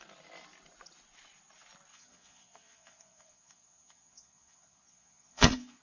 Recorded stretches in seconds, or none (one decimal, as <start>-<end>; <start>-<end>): 0.0-1.9